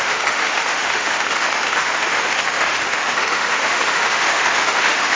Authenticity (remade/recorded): remade